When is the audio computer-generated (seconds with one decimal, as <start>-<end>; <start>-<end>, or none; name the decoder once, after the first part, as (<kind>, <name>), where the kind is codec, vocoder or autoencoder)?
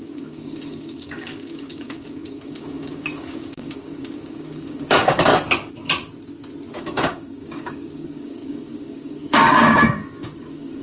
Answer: 0.0-5.3 (codec, DAC); 6.8-10.8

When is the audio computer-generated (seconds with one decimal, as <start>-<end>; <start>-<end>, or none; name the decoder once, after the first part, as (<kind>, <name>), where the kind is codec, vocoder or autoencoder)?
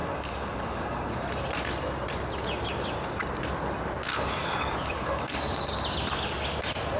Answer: 0.0-1.2 (codec, DAC); 4.1-5.7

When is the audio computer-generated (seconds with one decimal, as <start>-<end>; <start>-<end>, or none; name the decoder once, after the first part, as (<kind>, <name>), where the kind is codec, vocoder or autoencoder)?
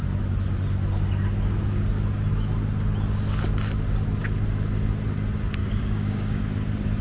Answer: 5.6-6.4 (codec, DAC)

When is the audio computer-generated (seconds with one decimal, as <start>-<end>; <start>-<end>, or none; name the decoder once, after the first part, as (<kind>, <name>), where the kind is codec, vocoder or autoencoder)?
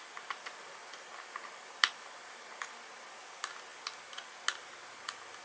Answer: none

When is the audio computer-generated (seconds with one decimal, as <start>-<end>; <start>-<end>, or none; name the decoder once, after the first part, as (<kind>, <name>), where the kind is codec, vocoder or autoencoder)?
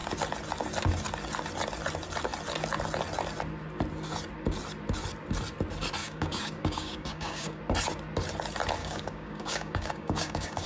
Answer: 6.0-7.6 (codec, DAC); 8.8-10.7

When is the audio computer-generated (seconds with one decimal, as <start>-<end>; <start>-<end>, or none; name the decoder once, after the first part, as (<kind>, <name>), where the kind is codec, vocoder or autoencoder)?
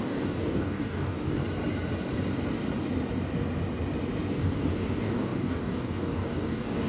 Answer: 0.0-1.4 (codec, DAC); 4.3-6.9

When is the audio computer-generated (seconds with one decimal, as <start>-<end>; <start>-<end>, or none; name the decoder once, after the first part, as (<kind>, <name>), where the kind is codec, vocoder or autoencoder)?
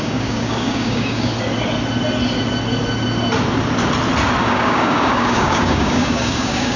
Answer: 0.0-1.3 (codec, DAC); 4.4-6.8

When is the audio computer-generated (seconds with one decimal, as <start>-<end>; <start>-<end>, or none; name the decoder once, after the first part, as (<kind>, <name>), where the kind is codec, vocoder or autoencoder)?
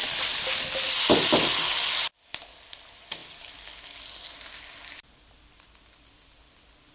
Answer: none